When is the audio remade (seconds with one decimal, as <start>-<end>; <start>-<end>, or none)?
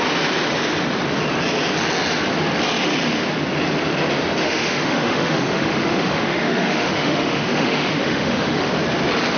4.4-8.7